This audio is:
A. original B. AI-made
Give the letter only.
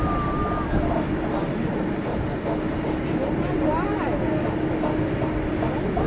A